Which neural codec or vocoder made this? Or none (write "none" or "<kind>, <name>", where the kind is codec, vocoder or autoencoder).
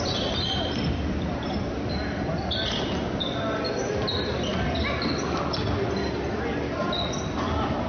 none